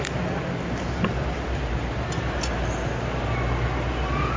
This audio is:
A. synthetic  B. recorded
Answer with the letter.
B